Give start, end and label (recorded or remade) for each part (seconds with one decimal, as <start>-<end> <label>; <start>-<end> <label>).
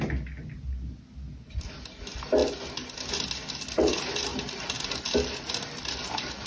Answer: 0.0-6.5 recorded